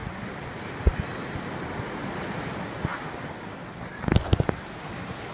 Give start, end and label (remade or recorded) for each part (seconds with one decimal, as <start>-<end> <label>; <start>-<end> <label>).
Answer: 0.0-5.3 recorded